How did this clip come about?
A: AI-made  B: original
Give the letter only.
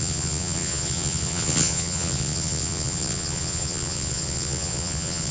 A